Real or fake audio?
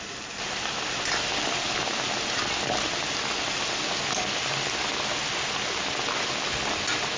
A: real